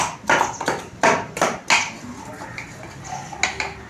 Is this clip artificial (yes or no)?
no